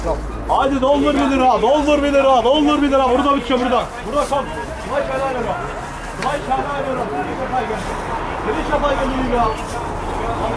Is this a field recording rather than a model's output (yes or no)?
yes